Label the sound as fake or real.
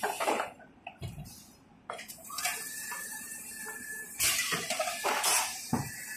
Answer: fake